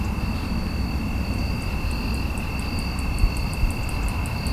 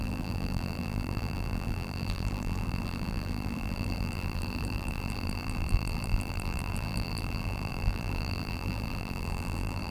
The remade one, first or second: second